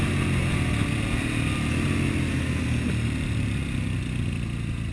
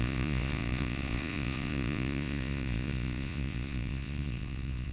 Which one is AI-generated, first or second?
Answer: second